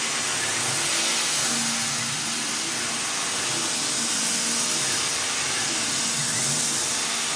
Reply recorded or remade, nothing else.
recorded